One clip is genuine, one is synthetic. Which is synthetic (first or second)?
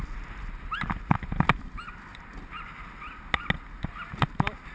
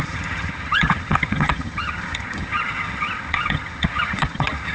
second